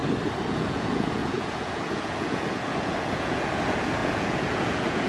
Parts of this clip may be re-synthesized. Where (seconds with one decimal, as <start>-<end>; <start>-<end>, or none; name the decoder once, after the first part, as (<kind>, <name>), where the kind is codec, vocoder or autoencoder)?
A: 0.5-5.1 (vocoder, Vocos)